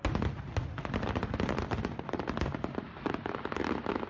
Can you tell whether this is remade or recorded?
recorded